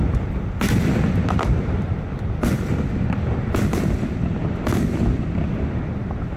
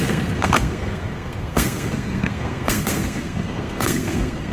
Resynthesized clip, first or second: second